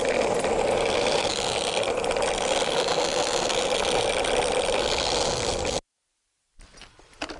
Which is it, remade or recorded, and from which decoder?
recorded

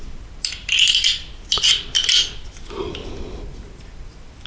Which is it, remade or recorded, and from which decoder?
recorded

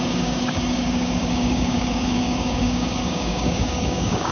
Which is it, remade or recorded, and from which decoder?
remade, codec, DAC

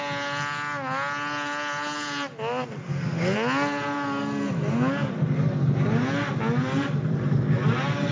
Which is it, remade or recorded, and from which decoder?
recorded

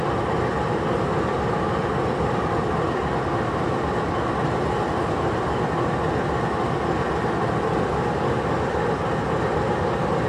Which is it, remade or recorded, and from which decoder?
recorded